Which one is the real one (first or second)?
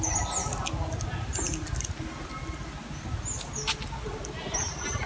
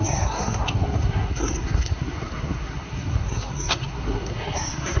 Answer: first